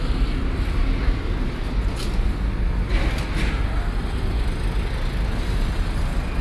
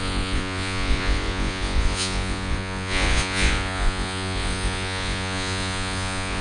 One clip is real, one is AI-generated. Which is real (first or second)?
first